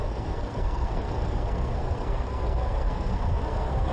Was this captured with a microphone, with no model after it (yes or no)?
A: no